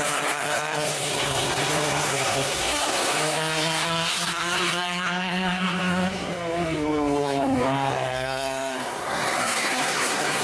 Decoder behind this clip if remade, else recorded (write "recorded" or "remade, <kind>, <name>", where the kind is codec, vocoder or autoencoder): remade, codec, SNAC